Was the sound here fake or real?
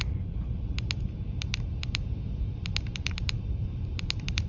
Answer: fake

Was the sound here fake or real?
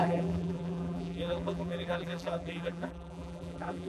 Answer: fake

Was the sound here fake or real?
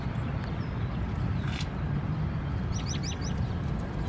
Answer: fake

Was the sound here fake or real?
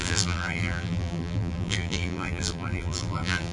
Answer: fake